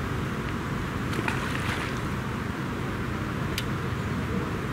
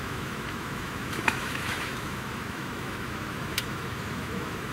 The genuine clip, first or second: first